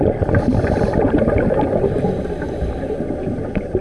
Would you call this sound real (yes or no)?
yes